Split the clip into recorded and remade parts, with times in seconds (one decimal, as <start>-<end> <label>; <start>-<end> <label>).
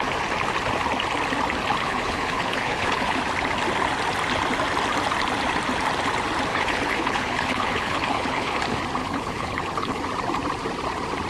0.0-1.8 recorded; 1.8-3.2 remade; 3.2-6.5 recorded; 6.5-8.6 remade; 8.6-9.0 recorded; 9.0-10.0 remade; 10.0-11.3 recorded